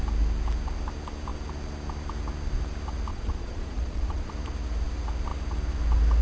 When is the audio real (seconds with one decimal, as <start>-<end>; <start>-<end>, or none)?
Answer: 0.0-3.1; 4.3-6.2

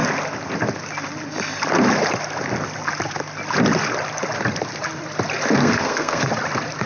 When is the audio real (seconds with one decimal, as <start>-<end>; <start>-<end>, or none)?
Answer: 0.0-5.6; 6.3-6.9

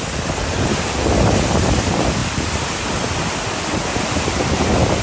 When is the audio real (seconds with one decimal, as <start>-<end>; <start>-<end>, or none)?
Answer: 0.0-5.0

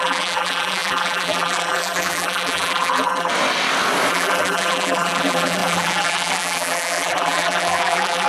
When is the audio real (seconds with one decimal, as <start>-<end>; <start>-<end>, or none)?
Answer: 3.3-4.1

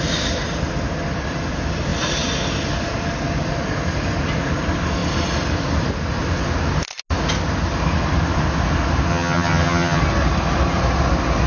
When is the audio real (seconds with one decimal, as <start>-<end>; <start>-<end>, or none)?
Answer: 0.0-9.1; 10.0-11.5